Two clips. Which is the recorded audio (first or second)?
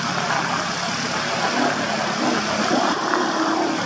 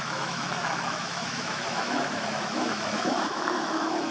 first